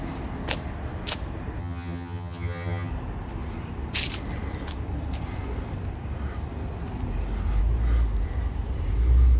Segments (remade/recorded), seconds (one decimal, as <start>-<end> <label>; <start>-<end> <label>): 0.0-1.6 recorded; 1.6-2.9 remade; 2.9-9.4 recorded